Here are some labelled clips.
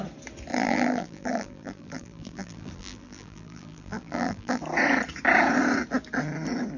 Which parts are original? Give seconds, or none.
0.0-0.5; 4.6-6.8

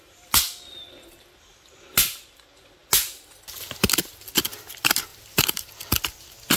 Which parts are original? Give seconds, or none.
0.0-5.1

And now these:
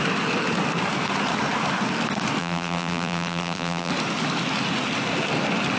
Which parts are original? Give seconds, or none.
0.0-2.4; 3.9-5.8

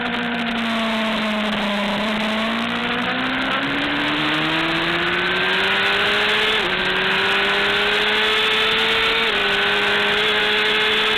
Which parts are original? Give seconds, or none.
0.0-11.2